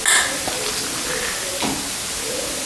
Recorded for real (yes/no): yes